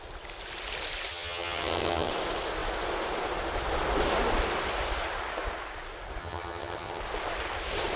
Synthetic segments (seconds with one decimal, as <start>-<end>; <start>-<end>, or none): 1.1-2.1; 6.2-7.0